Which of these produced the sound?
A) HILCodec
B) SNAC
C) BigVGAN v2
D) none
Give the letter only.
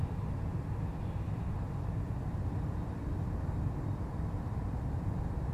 D